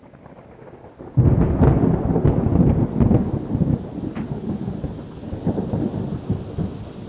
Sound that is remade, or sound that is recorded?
recorded